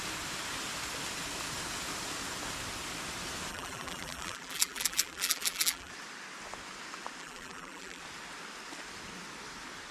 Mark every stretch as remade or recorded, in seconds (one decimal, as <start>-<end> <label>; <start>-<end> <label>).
0.0-3.5 recorded; 3.5-5.9 remade; 5.9-7.2 recorded; 7.2-8.0 remade; 8.0-9.9 recorded